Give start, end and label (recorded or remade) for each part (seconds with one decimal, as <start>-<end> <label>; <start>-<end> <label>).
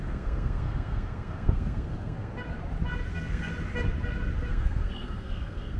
0.0-2.3 remade; 2.3-3.1 recorded; 3.1-3.5 remade; 3.5-4.5 recorded; 4.5-5.8 remade